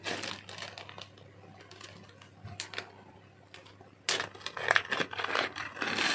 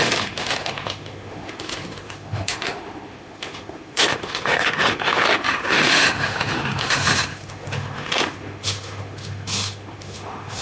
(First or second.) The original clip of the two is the first